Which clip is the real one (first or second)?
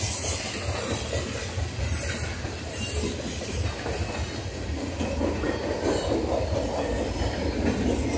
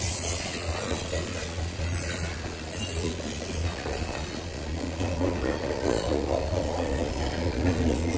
first